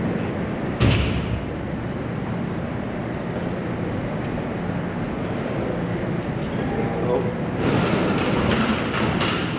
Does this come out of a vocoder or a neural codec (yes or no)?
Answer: no